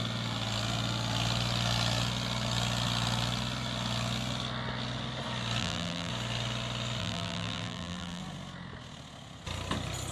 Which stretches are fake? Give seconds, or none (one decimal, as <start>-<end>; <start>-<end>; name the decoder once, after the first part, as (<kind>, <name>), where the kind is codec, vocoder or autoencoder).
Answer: 5.6-6.1 (vocoder, BigVGAN v2); 7.0-8.2